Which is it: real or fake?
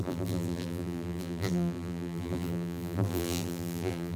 fake